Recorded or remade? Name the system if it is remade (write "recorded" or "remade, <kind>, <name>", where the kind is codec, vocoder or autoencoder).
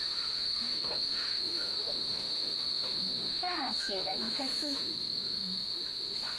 remade, autoencoder, DAC-VAE